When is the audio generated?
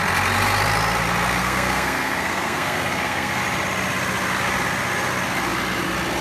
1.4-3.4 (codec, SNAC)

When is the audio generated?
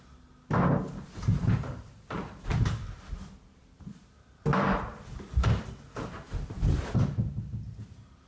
none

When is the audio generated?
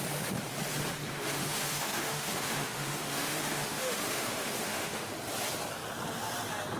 1.1-5.1 (autoencoder, DAC-VAE)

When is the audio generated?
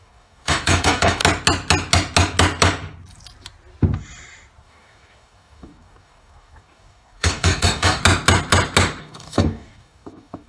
0.0-1.2 (codec, DAC); 4.6-8.0; 9.0-10.5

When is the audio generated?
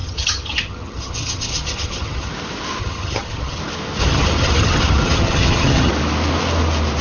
0.0-2.3 (vocoder, HiFi-GAN); 2.8-3.6; 4.0-5.9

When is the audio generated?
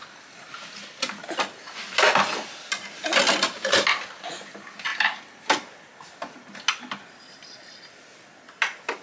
none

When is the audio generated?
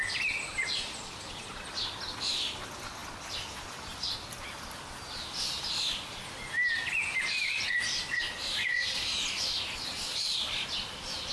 none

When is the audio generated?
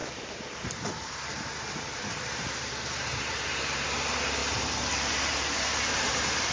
0.0-4.4 (vocoder, BigVGAN v2); 5.1-6.5